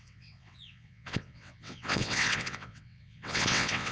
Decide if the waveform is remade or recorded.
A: remade